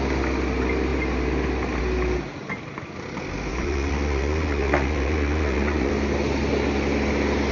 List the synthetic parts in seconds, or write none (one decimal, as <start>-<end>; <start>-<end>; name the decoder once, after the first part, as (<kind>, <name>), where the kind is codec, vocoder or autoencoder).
3.5-5.9 (vocoder, Vocos)